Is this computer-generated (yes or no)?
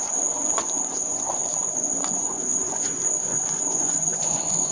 yes